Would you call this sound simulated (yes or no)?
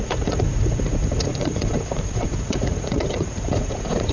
yes